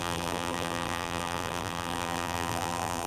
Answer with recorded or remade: remade